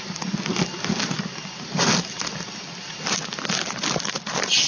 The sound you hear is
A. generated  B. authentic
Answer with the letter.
B